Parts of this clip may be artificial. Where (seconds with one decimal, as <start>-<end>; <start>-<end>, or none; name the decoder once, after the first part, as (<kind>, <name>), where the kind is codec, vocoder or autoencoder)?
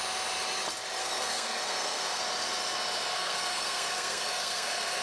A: 1.0-2.2 (codec, SNAC); 3.1-5.0